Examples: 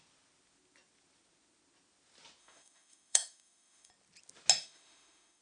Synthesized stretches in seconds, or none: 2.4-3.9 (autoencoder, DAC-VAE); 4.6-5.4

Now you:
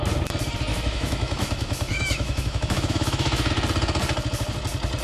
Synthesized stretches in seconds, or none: 0.7-3.5 (autoencoder, DAC-VAE)